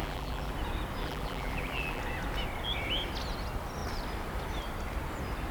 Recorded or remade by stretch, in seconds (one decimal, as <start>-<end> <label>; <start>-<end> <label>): 0.0-0.5 remade; 0.5-1.0 recorded; 1.0-2.0 remade; 2.0-5.5 recorded